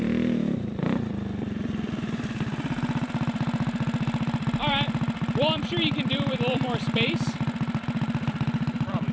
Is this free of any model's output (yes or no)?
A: no